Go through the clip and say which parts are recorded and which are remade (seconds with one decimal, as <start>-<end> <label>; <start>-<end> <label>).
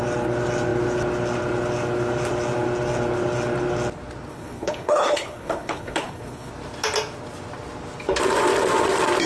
0.0-4.3 recorded; 4.3-6.5 remade; 6.5-9.3 recorded